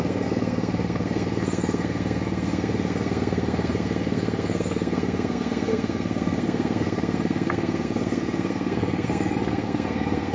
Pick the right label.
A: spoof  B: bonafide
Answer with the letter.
A